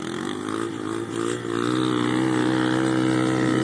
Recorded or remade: recorded